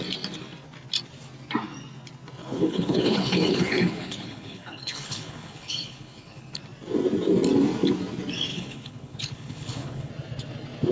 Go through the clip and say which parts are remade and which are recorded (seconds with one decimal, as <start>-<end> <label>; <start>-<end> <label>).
0.0-2.4 recorded; 2.4-6.6 remade; 6.6-8.5 recorded; 8.5-10.1 remade; 10.1-10.9 recorded